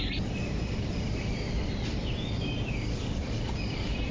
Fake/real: fake